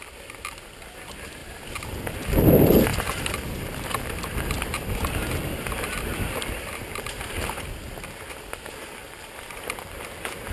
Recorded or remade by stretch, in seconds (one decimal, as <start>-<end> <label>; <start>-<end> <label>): 0.0-2.9 recorded; 2.9-7.3 remade; 7.3-9.0 recorded; 9.0-10.0 remade; 10.0-10.5 recorded